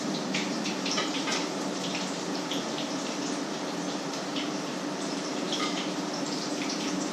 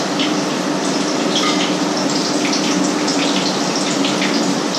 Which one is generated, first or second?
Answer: first